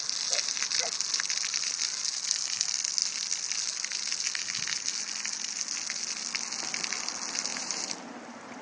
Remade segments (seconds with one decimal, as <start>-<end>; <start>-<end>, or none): 7.5-8.6